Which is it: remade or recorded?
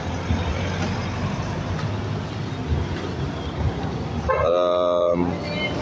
recorded